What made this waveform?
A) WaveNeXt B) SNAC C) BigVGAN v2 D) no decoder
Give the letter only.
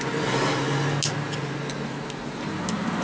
D